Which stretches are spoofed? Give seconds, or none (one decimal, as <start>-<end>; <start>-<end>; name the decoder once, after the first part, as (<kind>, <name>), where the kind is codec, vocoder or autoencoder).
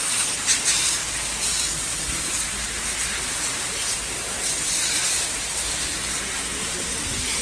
none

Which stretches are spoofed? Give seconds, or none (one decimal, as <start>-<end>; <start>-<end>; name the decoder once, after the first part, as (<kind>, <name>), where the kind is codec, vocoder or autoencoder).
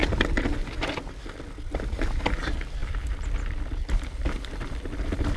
none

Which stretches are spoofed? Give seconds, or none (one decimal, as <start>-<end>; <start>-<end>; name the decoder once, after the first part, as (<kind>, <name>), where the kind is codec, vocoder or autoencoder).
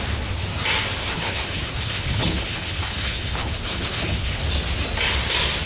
1.0-4.4 (codec, HILCodec)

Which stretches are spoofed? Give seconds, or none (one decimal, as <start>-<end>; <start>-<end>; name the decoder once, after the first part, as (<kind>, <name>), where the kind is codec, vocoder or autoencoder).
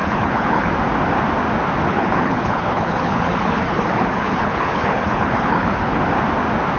0.0-0.7 (codec, HILCodec); 1.9-6.0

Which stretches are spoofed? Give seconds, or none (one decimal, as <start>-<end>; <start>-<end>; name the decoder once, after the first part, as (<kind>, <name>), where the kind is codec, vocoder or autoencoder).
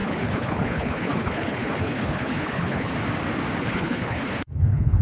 0.0-2.9 (codec, HILCodec); 3.6-5.0